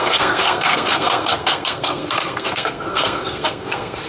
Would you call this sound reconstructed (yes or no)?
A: yes